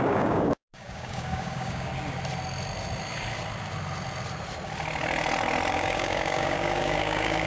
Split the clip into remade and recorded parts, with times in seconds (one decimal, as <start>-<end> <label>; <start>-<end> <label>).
0.0-1.9 remade; 1.9-5.7 recorded; 5.7-7.5 remade

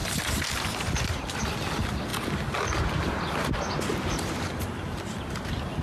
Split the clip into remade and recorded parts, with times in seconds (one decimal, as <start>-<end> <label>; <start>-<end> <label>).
0.0-5.8 recorded

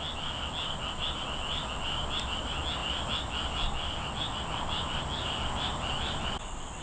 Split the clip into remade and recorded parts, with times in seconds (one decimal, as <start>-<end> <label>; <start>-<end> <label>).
0.0-6.8 recorded